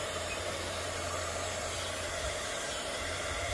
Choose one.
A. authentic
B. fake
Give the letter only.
B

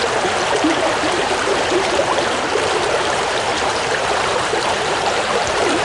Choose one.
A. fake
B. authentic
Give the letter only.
A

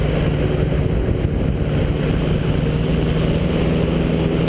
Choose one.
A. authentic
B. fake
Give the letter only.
A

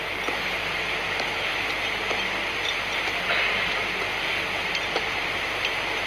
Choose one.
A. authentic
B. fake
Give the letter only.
A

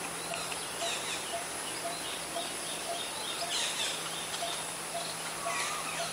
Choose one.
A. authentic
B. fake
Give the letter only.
A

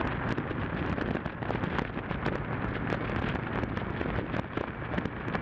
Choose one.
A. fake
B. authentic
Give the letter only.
B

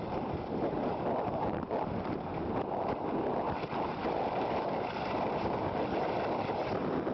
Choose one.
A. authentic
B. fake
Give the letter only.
A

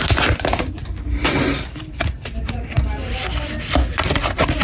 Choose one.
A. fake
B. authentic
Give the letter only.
B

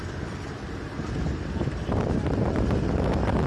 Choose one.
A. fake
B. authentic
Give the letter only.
A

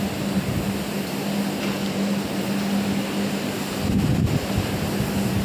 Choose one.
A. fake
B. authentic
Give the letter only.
B